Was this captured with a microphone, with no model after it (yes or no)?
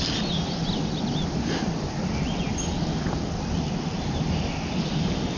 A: yes